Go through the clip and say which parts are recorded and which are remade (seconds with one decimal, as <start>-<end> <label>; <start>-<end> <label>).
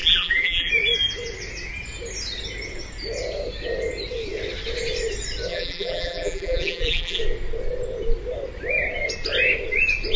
0.0-0.7 remade; 0.7-5.5 recorded; 5.5-7.2 remade; 7.2-10.2 recorded